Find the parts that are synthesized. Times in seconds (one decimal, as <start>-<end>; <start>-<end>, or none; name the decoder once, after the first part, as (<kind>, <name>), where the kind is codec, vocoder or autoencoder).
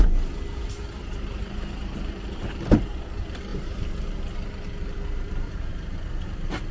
0.0-6.7 (vocoder, BigVGAN v2)